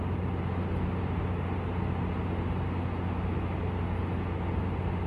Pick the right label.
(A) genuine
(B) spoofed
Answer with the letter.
A